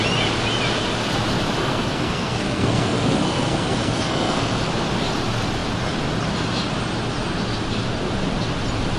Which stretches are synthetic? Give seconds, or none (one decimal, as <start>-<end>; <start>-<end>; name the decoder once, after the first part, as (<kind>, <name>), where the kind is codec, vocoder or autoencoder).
1.6-4.7 (codec, SNAC)